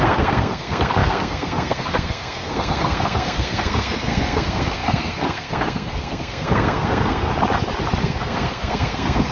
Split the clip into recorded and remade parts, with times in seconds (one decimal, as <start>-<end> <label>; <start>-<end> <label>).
0.0-7.3 remade; 7.3-8.0 recorded; 8.0-9.3 remade